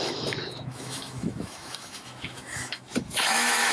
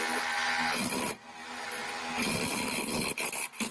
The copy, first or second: first